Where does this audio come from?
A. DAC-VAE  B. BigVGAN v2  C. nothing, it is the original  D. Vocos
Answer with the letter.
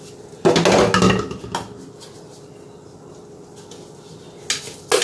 C